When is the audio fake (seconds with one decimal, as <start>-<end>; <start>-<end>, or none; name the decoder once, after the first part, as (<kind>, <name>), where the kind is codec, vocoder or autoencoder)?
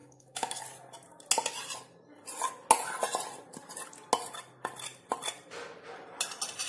0.0-0.6 (codec, DAC)